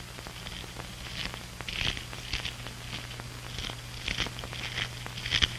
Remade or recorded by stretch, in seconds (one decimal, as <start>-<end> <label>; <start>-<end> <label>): 0.0-5.6 recorded